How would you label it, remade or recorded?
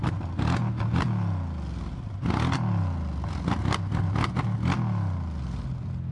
recorded